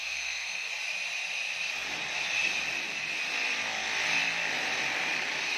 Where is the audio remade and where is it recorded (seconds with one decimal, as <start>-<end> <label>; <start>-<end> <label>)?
0.0-0.7 remade; 0.7-5.6 recorded